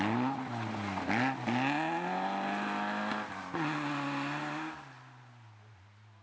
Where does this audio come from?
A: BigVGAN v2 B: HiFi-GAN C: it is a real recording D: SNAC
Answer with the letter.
C